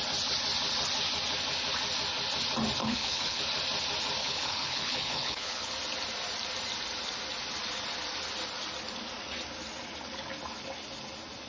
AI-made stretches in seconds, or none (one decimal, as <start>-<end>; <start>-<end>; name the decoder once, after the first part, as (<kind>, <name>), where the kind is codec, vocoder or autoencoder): 2.8-3.4 (codec, HILCodec); 4.2-5.7